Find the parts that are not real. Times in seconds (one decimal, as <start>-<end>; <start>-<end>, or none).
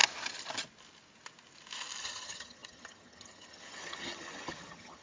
2.0-5.0